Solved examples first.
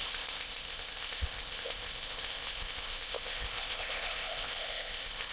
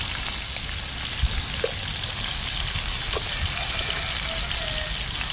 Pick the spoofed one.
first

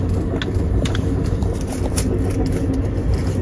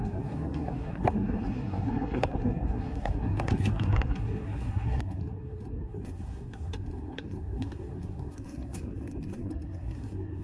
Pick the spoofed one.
second